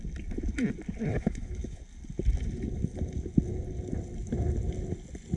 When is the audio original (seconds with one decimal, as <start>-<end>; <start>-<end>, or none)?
0.0-1.1; 1.8-5.4